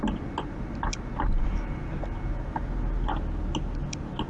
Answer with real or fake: real